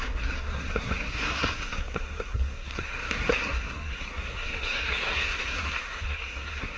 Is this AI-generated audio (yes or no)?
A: yes